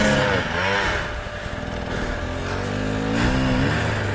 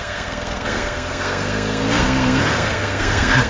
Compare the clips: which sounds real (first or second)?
first